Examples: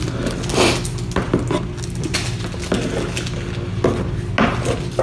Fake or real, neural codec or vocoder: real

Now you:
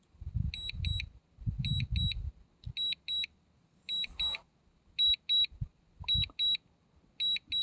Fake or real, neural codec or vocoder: real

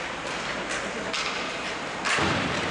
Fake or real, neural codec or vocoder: real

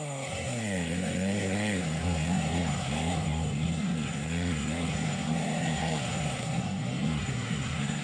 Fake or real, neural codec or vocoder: fake, codec, SNAC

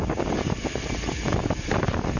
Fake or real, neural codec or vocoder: real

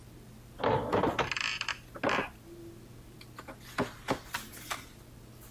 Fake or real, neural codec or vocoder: real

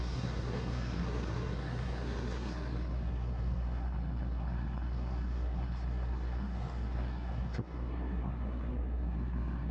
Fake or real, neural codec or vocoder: fake, codec, SNAC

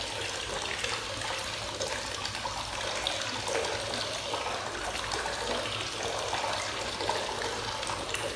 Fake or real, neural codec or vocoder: real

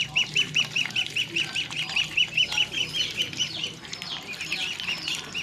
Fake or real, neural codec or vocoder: real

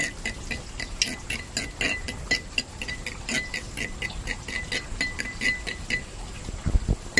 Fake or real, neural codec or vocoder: real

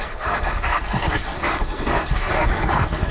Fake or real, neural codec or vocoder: fake, codec, SNAC